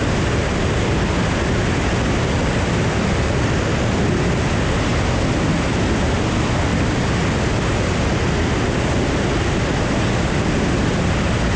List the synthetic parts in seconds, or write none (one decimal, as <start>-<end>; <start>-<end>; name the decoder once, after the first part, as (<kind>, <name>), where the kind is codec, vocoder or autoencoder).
none